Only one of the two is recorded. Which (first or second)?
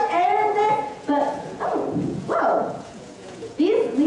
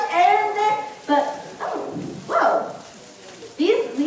second